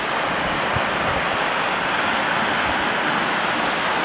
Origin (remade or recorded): recorded